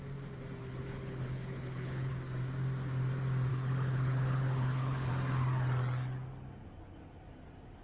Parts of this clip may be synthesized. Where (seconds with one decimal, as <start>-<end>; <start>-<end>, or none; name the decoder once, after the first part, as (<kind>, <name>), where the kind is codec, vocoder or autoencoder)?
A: 0.6-2.1 (codec, HILCodec); 3.5-5.1